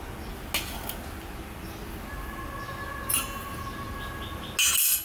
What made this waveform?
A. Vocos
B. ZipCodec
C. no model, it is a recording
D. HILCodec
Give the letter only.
C